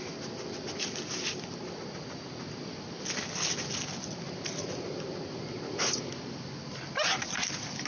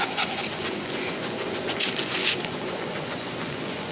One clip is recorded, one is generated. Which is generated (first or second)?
second